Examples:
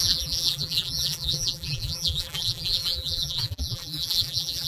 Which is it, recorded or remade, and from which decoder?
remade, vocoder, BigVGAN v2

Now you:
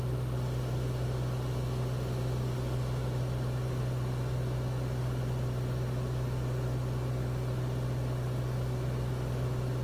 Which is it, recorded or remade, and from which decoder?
recorded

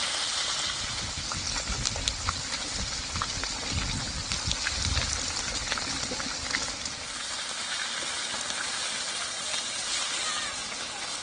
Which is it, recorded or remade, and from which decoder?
recorded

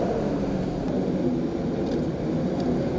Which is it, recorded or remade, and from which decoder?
recorded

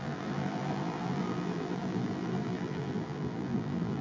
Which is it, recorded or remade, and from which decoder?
remade, vocoder, BigVGAN v2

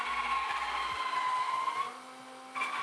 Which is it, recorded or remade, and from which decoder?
recorded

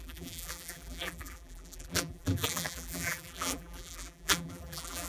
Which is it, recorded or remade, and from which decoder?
remade, vocoder, BigVGAN v2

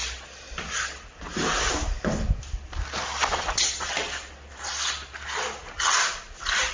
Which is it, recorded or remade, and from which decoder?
remade, vocoder, BigVGAN v2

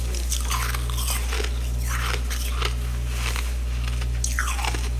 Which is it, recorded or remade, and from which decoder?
recorded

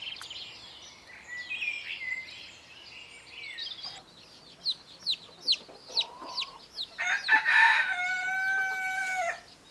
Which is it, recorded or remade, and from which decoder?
recorded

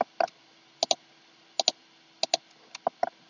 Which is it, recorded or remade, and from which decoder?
recorded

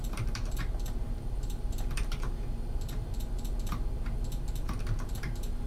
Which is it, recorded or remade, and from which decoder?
remade, vocoder, BigVGAN v2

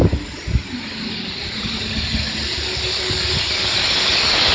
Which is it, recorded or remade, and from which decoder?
recorded